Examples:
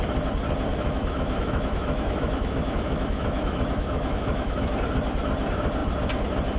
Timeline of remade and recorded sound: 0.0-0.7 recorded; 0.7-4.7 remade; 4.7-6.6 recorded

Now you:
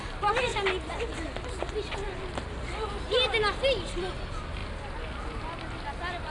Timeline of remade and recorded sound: 0.0-6.3 recorded

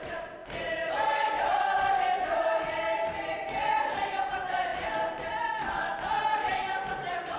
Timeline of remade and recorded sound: 0.0-6.5 remade; 6.5-7.0 recorded; 7.0-7.4 remade

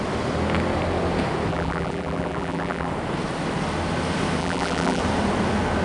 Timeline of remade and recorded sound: 0.0-1.5 recorded; 1.5-2.9 remade; 2.9-4.4 recorded; 4.4-5.0 remade; 5.0-5.8 recorded

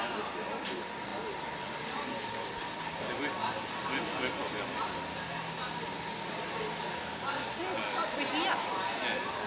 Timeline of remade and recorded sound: 0.0-9.5 recorded

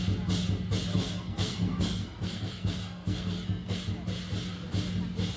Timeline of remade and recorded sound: 0.0-0.9 recorded; 0.9-3.8 remade; 3.8-5.4 recorded